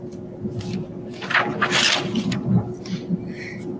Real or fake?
real